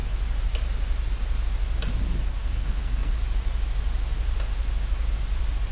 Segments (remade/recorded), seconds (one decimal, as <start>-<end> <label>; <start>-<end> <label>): 0.0-2.3 recorded; 2.3-3.1 remade; 3.1-5.7 recorded